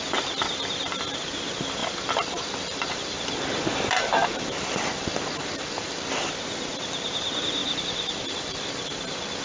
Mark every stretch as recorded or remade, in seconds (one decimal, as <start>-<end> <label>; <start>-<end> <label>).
0.0-1.8 recorded; 1.8-6.3 remade; 6.3-7.6 recorded; 7.6-8.6 remade; 8.6-9.4 recorded